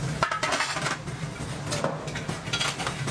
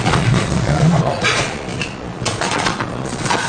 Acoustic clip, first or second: first